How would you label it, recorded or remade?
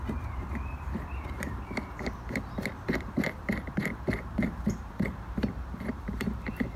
remade